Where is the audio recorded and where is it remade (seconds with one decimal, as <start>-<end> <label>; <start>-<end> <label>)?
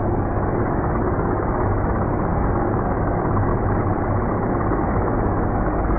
0.0-3.5 remade; 3.5-4.3 recorded; 4.3-6.0 remade